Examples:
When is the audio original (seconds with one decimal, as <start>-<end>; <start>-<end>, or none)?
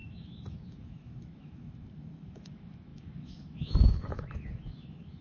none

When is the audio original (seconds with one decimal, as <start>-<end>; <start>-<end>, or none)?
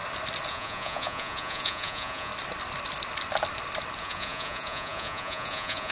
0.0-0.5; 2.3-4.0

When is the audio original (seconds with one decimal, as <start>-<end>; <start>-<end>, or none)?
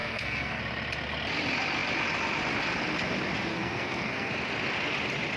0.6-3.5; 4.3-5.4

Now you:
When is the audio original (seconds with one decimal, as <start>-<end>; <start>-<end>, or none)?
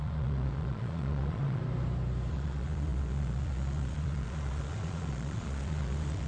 1.6-2.3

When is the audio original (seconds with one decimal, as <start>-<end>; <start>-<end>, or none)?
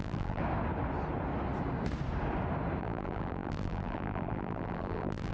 0.4-2.8